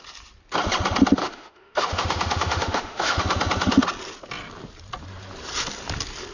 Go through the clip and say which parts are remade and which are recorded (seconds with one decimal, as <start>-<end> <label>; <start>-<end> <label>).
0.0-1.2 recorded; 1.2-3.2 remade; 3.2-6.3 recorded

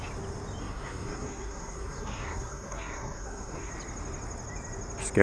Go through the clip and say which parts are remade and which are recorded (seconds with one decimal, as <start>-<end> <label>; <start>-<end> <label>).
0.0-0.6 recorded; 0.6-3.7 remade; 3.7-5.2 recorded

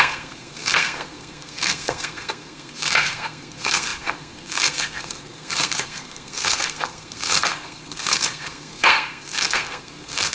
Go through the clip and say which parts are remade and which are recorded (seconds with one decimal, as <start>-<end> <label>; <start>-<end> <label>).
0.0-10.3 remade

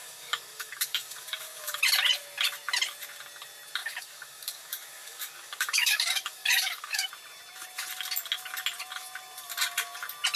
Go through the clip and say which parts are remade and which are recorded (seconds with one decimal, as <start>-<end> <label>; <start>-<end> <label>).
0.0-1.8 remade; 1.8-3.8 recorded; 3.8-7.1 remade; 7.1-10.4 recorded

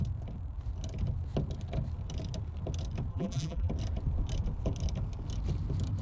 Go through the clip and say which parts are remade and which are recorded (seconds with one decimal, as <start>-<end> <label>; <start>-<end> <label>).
0.0-3.1 recorded; 3.1-3.7 remade; 3.7-6.0 recorded

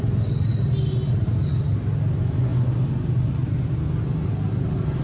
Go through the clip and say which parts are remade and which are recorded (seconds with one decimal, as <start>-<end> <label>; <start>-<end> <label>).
0.0-5.0 recorded

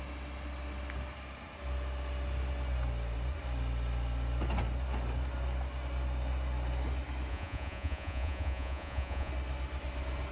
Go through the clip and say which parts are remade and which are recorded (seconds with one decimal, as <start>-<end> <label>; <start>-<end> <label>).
0.0-7.3 recorded; 7.3-9.3 remade; 9.3-10.3 recorded

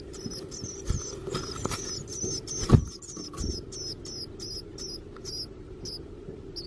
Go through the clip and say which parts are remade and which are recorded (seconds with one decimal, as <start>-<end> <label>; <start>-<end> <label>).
0.0-6.7 recorded